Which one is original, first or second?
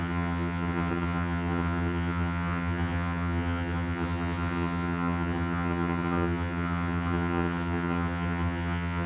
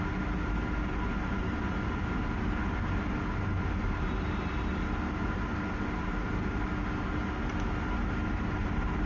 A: second